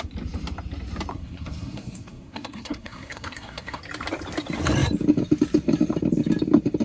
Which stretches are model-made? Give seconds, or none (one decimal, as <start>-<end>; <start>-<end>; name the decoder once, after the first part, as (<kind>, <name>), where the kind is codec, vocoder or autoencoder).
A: 1.1-3.8 (codec, SNAC)